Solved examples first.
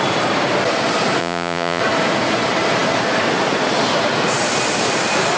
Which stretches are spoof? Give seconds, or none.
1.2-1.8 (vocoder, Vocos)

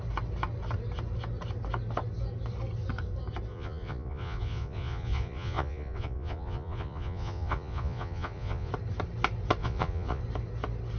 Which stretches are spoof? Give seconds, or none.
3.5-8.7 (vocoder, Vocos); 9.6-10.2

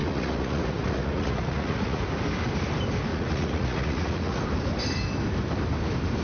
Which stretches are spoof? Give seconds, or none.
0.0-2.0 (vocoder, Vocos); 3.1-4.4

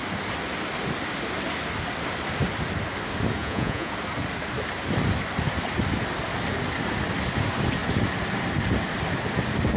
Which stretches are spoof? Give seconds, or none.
3.4-3.9 (vocoder, Vocos)

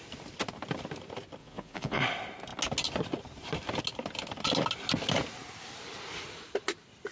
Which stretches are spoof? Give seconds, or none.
1.4-2.0 (vocoder, Vocos)

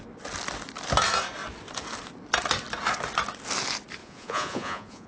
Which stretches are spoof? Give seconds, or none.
4.0-5.1 (vocoder, Vocos)

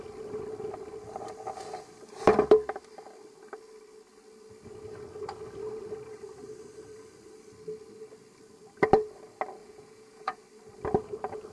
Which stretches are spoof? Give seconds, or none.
9.6-10.4 (vocoder, Vocos)

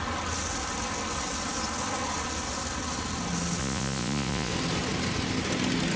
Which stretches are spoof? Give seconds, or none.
3.6-4.5 (vocoder, Vocos)